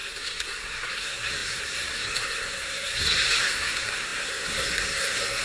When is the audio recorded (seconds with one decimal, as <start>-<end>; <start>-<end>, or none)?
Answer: none